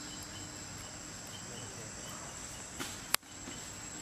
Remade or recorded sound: recorded